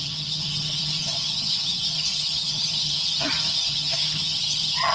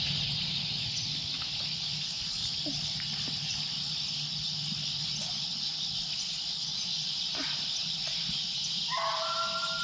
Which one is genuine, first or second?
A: second